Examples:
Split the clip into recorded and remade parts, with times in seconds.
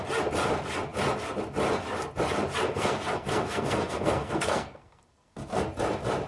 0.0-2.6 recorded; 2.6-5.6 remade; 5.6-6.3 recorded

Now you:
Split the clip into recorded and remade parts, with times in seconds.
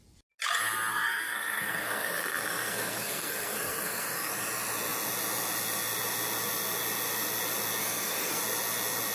0.0-0.9 recorded; 0.9-4.3 remade; 4.3-7.8 recorded; 7.8-8.4 remade; 8.4-9.1 recorded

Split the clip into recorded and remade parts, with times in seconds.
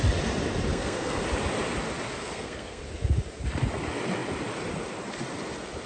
0.0-0.7 recorded; 0.7-1.2 remade; 1.2-2.2 recorded; 2.2-2.8 remade; 2.8-5.9 recorded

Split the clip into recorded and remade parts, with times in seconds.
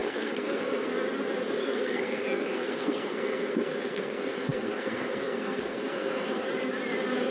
0.0-0.9 remade; 0.9-1.6 recorded; 1.6-6.5 remade; 6.5-7.3 recorded